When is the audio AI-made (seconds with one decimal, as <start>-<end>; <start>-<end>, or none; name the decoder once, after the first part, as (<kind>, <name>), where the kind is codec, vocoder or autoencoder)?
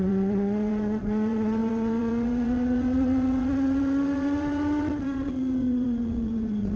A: 0.0-6.8 (vocoder, WaveNeXt)